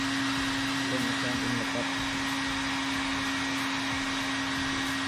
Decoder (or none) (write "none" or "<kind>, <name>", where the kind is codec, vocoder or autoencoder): none